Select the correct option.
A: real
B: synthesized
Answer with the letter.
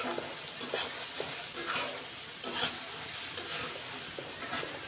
A